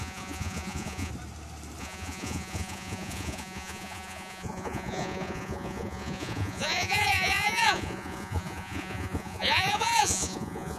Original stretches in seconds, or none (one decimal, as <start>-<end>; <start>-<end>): 1.1-1.8